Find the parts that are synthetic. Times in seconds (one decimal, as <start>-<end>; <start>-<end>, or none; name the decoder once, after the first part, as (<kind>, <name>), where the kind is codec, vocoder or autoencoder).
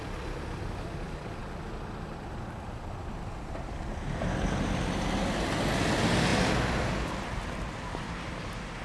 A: none